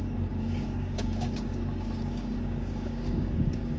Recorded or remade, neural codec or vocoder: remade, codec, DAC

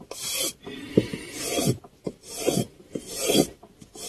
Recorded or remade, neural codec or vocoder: recorded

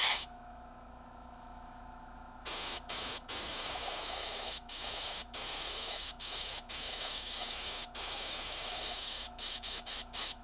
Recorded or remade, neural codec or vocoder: remade, autoencoder, DAC-VAE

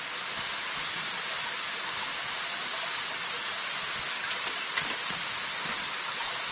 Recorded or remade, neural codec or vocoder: recorded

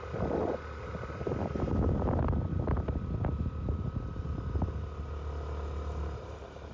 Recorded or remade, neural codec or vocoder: recorded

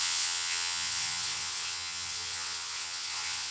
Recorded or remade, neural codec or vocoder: remade, vocoder, WaveNeXt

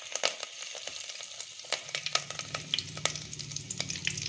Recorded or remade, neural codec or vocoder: recorded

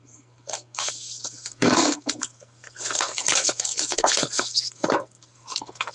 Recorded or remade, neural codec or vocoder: remade, codec, SNAC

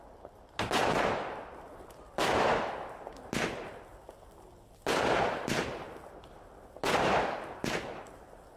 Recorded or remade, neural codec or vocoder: recorded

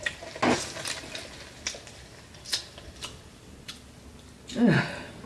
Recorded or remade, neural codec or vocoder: recorded